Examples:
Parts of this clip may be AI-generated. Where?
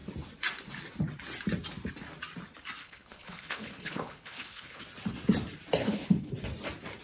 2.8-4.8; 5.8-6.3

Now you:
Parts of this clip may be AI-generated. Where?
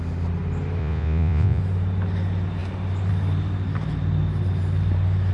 0.8-1.6